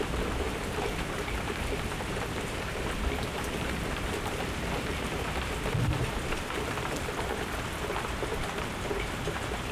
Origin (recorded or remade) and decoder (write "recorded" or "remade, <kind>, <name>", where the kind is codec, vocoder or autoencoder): remade, vocoder, BigVGAN v2